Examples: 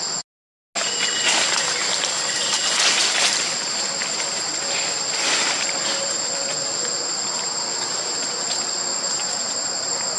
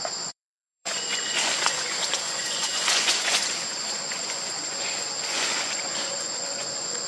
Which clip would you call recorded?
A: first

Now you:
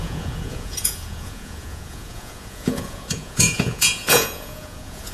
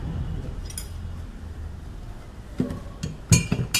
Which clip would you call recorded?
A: second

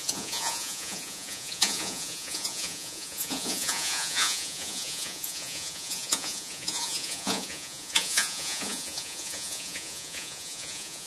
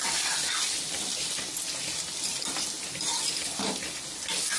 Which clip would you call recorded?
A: second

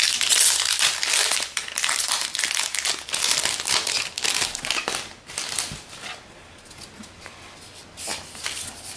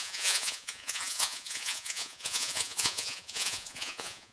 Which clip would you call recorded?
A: first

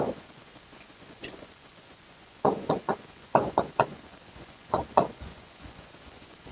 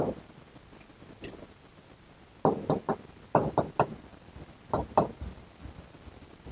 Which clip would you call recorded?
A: second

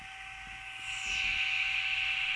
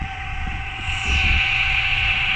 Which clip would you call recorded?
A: first